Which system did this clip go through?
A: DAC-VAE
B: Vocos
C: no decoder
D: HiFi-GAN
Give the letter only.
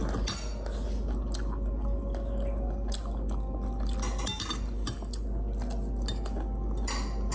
C